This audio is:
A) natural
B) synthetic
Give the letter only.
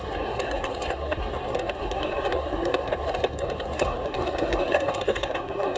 B